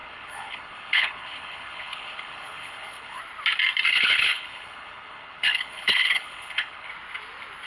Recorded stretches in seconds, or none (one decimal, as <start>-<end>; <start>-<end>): 3.2-3.9; 6.9-7.7